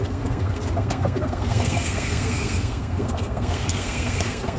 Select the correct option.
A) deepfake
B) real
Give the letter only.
A